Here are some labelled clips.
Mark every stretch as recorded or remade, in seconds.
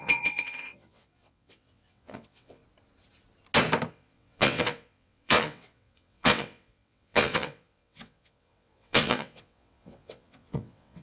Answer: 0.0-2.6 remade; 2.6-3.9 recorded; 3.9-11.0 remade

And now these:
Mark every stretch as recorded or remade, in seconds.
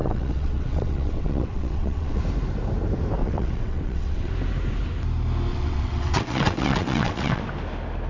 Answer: 0.0-2.2 remade; 2.2-3.2 recorded; 3.2-4.3 remade; 4.3-5.5 recorded; 5.5-7.4 remade; 7.4-8.1 recorded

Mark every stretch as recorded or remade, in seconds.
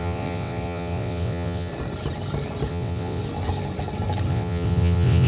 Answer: 0.0-1.7 remade; 1.7-2.7 recorded; 2.7-3.2 remade; 3.2-4.3 recorded; 4.3-5.3 remade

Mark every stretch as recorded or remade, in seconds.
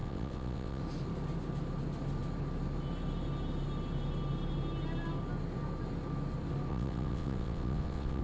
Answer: 0.0-0.8 remade; 0.8-6.7 recorded; 6.7-8.2 remade